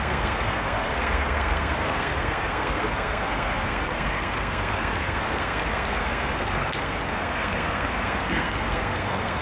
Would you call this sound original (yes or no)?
no